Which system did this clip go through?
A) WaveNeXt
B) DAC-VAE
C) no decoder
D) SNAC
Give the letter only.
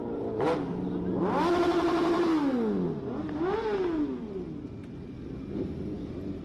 C